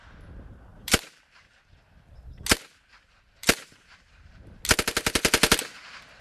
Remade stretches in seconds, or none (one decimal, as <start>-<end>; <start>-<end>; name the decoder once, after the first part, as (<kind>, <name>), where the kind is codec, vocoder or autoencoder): 0.7-1.6 (vocoder, BigVGAN v2); 3.4-4.6

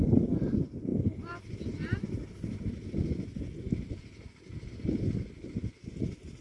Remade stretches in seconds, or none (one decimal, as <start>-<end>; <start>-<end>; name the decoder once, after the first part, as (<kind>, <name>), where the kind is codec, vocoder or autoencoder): none

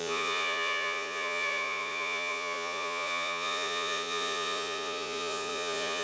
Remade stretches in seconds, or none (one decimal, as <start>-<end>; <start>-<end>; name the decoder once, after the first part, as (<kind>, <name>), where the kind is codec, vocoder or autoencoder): 0.0-6.0 (vocoder, Vocos)

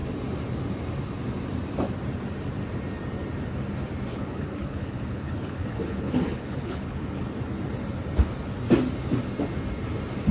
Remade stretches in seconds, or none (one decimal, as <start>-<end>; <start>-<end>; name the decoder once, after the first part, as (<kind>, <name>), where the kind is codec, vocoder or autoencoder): 4.1-7.2 (codec, HILCodec)

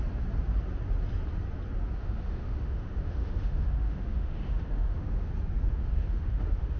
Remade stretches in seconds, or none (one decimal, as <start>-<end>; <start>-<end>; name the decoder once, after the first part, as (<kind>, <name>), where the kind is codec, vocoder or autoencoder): 2.0-5.3 (autoencoder, DAC-VAE); 5.7-6.8

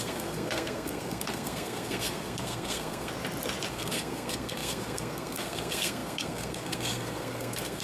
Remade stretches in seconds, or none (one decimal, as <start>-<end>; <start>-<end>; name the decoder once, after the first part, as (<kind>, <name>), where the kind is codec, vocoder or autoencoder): 0.0-3.1 (codec, SNAC); 3.7-7.8

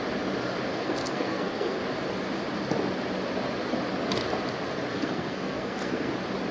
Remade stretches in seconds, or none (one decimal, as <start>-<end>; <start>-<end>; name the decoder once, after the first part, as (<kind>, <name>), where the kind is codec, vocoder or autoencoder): 0.7-1.8 (codec, SNAC); 4.9-6.1